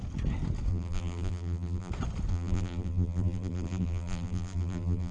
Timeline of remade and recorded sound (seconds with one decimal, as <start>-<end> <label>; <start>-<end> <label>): 0.0-0.7 recorded; 0.7-1.9 remade; 1.9-2.3 recorded; 2.3-5.1 remade